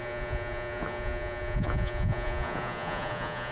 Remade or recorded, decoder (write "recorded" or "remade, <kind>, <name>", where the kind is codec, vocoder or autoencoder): remade, vocoder, Vocos